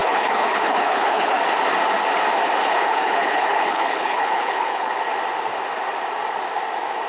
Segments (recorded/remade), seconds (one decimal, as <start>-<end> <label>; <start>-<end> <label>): 0.0-1.4 remade; 1.4-2.6 recorded; 2.6-4.9 remade; 4.9-7.1 recorded